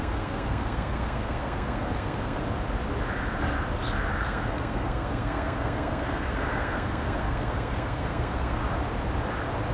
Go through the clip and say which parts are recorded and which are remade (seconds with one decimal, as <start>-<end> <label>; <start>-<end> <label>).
0.0-2.4 remade; 2.4-4.1 recorded; 4.1-8.6 remade; 8.6-9.7 recorded